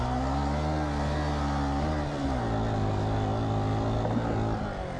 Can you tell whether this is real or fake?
real